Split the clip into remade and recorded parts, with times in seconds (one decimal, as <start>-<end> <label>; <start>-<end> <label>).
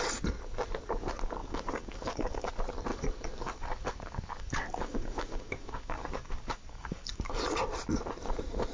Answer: 0.0-1.4 recorded; 1.4-2.5 remade; 2.5-2.9 recorded; 2.9-7.3 remade; 7.3-8.7 recorded